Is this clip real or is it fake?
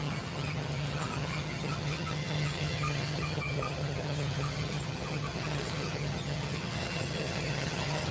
fake